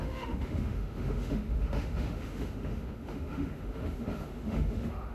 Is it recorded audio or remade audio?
remade